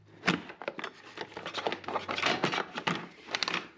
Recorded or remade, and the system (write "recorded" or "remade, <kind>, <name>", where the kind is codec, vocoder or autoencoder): recorded